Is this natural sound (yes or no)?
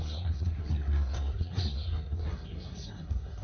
no